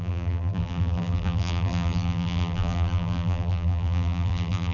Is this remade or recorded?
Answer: remade